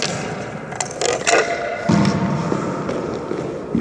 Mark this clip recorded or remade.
recorded